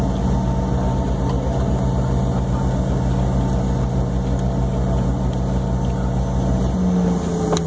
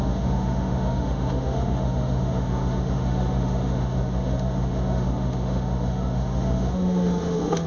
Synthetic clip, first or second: second